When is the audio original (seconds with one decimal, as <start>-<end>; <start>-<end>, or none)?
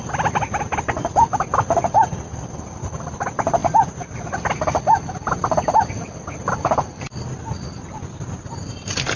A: 0.0-9.2